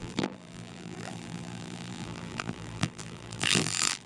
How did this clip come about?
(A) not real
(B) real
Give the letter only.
A